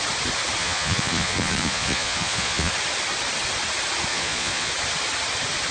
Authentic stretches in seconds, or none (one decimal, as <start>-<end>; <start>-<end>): 0.0-0.6; 2.7-4.1; 4.7-5.7